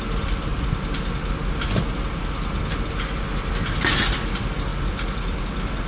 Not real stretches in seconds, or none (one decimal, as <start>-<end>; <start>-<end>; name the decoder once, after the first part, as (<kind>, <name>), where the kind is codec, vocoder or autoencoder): none